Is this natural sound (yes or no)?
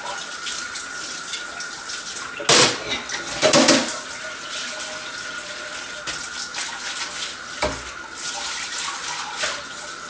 yes